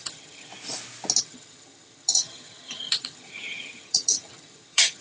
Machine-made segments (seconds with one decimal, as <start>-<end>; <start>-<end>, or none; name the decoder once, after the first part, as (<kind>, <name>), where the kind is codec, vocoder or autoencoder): 0.0-0.5 (vocoder, HiFi-GAN); 1.2-5.0